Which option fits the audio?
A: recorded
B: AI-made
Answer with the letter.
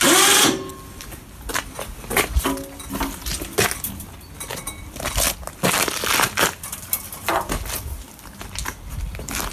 A